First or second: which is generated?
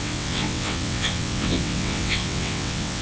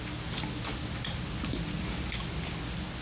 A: first